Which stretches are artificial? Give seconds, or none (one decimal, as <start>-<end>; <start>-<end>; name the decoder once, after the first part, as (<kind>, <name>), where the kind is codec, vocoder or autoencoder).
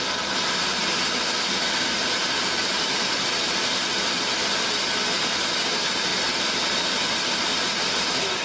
none